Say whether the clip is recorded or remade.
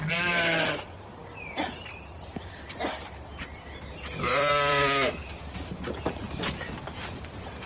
remade